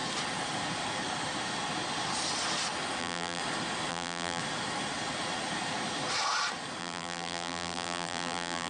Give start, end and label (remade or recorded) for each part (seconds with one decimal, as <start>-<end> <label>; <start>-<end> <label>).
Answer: 0.0-3.0 recorded; 3.0-3.4 remade; 3.4-3.9 recorded; 3.9-4.4 remade; 4.4-6.8 recorded; 6.8-8.7 remade